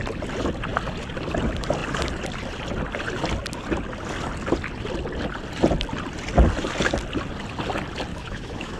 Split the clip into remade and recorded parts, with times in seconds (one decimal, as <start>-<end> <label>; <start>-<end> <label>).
0.0-8.1 recorded; 8.1-8.8 remade